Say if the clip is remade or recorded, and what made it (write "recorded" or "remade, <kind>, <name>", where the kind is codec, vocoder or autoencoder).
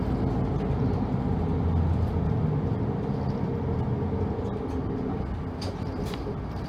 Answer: recorded